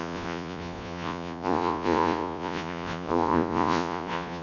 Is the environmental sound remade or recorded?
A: remade